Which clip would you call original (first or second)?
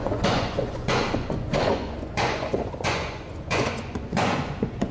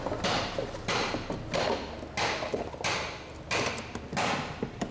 second